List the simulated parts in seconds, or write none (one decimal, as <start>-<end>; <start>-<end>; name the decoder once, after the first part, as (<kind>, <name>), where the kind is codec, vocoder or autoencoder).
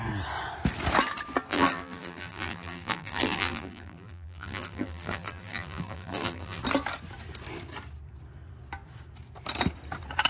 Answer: 1.5-6.6 (vocoder, BigVGAN v2)